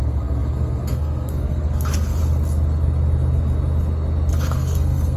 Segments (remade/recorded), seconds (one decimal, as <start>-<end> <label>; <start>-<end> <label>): 0.0-2.2 remade; 2.2-4.3 recorded; 4.3-5.2 remade